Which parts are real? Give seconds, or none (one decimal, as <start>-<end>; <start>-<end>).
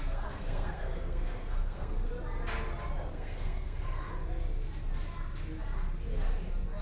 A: 2.1-3.1; 4.1-6.8